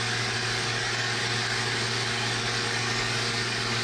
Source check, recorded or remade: remade